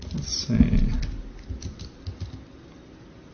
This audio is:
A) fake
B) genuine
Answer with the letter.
B